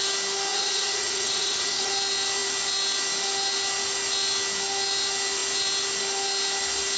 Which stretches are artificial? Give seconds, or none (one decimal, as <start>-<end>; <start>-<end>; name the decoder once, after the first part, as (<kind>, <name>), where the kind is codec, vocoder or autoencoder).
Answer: 0.5-1.9 (vocoder, Vocos)